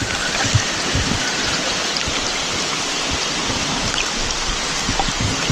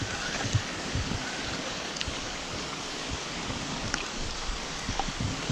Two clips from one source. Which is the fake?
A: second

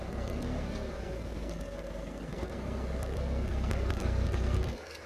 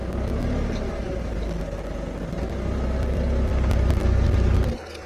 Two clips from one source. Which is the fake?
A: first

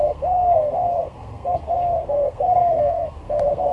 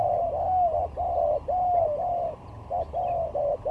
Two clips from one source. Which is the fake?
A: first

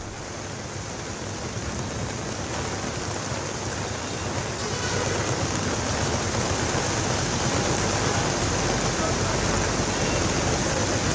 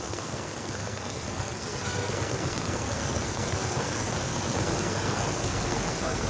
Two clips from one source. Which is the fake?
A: second